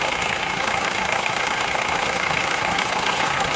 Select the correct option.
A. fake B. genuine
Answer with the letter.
A